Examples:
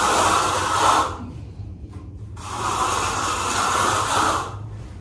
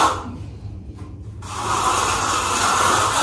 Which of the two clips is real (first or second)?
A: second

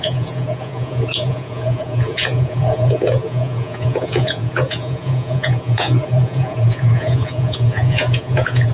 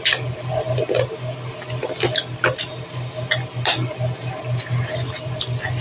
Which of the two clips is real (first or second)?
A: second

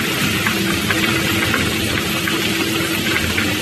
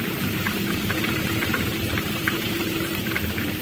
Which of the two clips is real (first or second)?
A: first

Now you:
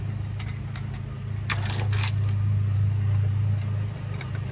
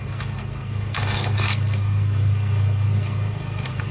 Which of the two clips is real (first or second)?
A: first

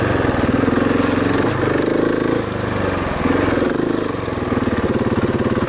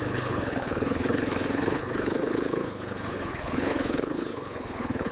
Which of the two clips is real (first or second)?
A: first